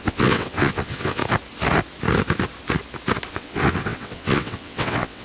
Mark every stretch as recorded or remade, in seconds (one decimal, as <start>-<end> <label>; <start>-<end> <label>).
0.0-1.2 remade; 1.2-3.3 recorded; 3.3-5.2 remade